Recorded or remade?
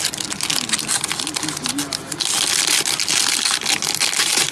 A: recorded